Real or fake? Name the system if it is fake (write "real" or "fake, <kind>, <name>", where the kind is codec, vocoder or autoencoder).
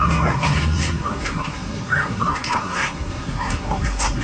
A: fake, codec, SNAC